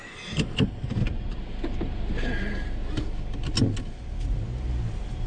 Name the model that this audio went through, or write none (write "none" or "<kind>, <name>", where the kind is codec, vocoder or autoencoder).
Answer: none